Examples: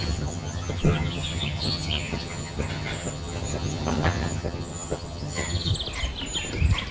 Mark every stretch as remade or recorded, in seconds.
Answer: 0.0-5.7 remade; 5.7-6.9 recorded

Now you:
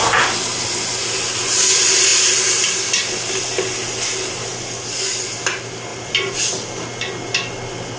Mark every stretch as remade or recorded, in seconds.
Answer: 0.0-5.9 recorded; 5.9-6.5 remade; 6.5-8.0 recorded